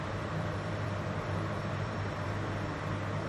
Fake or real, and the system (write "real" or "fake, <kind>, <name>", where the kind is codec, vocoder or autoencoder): fake, vocoder, BigVGAN v2